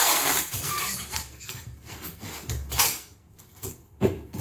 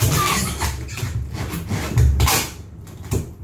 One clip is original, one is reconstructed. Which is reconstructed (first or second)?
first